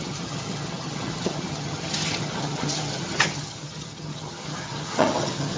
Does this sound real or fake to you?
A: fake